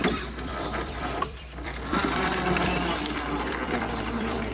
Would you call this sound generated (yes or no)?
yes